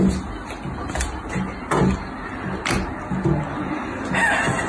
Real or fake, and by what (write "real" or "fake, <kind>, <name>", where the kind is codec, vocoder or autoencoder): real